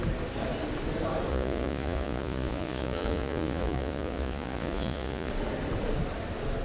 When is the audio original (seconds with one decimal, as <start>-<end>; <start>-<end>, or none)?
0.0-1.3; 5.3-6.6